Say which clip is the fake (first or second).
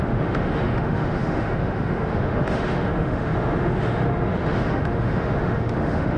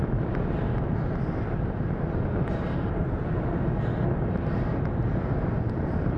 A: first